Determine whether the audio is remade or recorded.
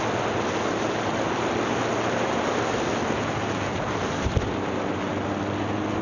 recorded